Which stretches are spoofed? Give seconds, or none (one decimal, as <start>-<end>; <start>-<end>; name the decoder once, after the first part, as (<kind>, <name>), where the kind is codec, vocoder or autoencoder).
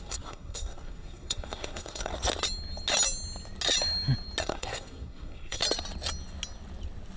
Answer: 0.0-2.1 (codec, SNAC); 4.4-5.6